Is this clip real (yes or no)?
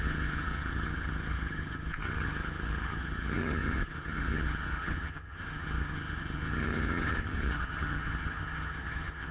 no